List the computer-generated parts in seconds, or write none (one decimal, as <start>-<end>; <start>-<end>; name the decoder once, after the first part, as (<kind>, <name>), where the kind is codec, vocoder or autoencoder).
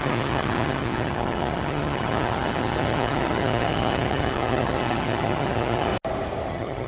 0.0-5.9 (vocoder, HiFi-GAN); 6.5-6.9